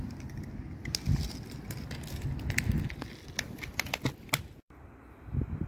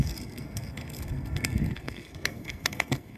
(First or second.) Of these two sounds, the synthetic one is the second